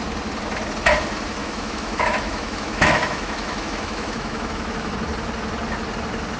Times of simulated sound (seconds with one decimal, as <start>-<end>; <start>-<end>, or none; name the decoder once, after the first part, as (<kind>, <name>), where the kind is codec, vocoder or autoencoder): 1.4-4.9 (autoencoder, DAC-VAE)